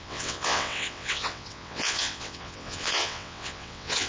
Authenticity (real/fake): fake